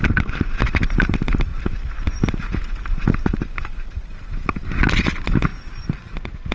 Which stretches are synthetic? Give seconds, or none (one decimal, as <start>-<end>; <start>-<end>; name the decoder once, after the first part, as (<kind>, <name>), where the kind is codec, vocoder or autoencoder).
0.7-1.5 (vocoder, BigVGAN v2); 3.6-5.5